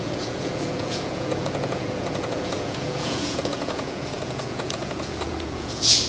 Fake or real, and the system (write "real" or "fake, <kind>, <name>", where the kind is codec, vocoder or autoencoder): fake, vocoder, Vocos